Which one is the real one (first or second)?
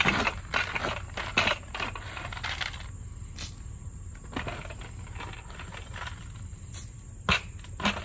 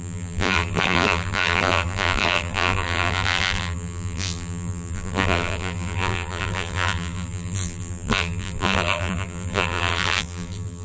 first